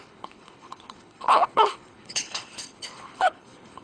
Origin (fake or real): fake